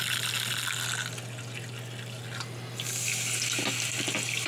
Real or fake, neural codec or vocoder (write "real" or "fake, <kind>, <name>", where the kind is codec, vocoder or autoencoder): real